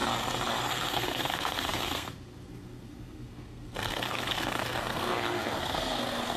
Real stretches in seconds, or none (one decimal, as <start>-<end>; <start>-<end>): 0.0-0.7